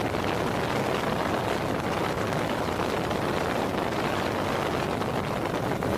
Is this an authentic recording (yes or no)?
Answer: yes